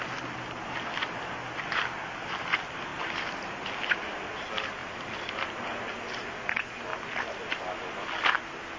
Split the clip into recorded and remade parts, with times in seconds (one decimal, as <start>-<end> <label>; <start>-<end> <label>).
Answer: 0.0-8.8 recorded